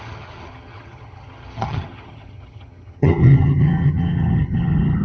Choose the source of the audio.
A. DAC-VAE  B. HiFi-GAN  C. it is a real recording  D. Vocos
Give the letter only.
B